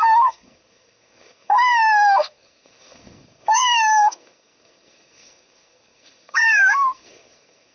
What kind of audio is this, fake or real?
fake